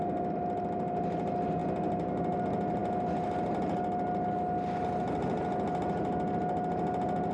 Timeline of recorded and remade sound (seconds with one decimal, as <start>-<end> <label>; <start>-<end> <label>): 0.0-7.3 recorded